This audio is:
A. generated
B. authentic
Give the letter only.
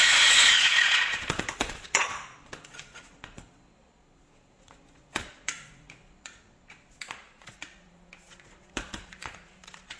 A